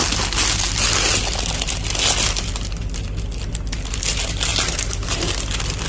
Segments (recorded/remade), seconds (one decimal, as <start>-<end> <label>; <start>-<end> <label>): 0.0-5.9 recorded